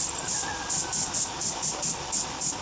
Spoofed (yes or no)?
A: no